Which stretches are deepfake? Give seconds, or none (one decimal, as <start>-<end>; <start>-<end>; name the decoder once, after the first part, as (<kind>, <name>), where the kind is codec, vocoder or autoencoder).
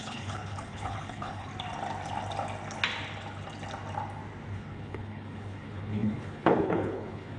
0.0-1.5 (codec, HILCodec); 4.5-7.4